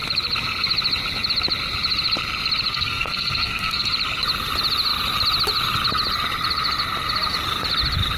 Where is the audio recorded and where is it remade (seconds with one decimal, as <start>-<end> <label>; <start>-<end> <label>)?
0.0-2.7 recorded; 2.7-3.9 remade; 3.9-8.2 recorded